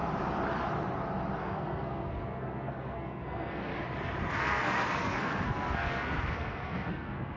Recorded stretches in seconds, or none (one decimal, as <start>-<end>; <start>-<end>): 0.0-1.4; 3.7-4.3